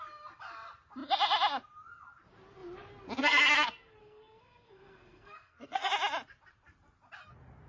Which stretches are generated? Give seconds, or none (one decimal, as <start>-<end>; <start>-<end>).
4.0-5.9